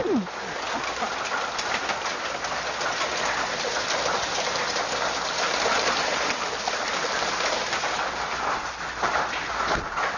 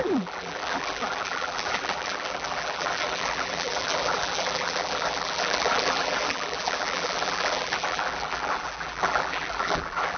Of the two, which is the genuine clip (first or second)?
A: first